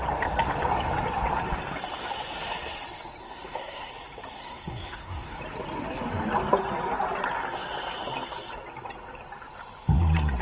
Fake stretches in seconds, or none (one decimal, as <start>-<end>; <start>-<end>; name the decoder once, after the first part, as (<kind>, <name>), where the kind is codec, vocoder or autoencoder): 3.2-3.9 (codec, SNAC); 4.4-5.4